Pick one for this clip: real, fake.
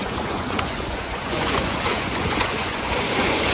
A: fake